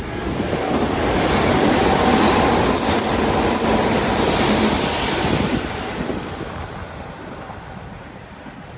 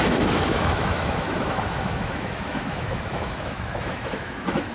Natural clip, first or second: first